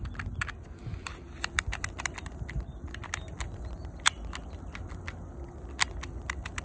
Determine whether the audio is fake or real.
real